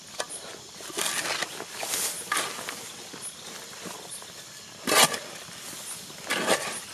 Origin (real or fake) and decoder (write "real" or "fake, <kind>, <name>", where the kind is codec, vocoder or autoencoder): real